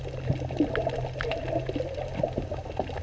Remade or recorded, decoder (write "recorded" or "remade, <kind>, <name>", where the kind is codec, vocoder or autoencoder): recorded